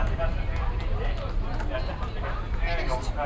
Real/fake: real